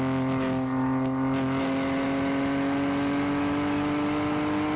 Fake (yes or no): no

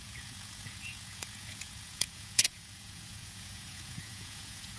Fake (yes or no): yes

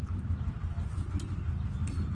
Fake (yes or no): no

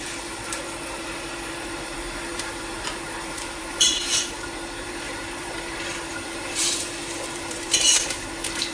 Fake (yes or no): yes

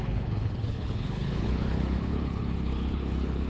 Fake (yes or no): yes